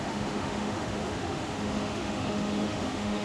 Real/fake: fake